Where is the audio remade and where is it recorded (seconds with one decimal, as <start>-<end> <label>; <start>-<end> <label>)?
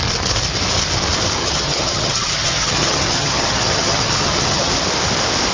0.0-1.4 recorded; 1.4-4.7 remade; 4.7-5.5 recorded